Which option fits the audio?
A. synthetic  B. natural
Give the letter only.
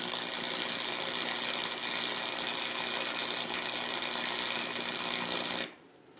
B